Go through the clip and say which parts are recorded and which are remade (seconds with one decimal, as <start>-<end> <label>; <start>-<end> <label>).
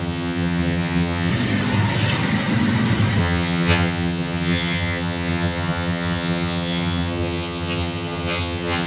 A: 0.0-1.3 remade; 1.3-3.2 recorded; 3.2-8.9 remade